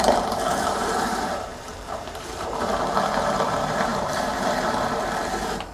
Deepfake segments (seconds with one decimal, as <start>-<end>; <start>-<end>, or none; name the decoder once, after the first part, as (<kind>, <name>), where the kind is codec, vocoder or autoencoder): 0.0-5.7 (vocoder, BigVGAN v2)